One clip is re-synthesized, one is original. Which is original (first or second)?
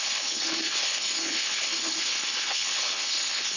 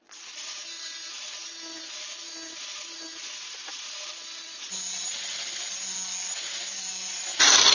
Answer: second